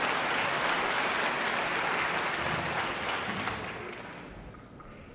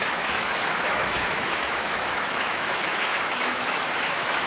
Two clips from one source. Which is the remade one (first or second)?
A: second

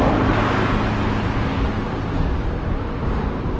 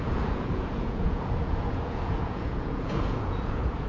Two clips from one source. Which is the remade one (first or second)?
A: second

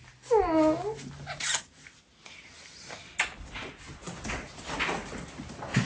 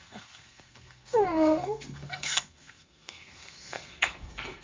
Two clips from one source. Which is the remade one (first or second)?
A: second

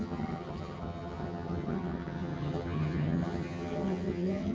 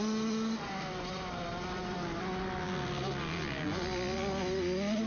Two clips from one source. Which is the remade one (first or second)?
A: first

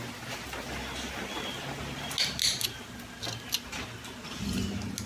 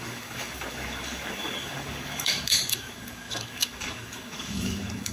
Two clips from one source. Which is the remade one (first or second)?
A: second